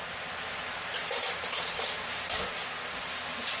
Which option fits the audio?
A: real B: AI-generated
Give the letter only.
A